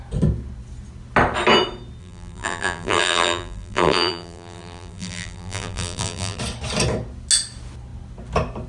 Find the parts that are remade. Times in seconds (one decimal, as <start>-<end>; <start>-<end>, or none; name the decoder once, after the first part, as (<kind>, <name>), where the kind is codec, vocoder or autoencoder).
2.0-6.4 (vocoder, BigVGAN v2)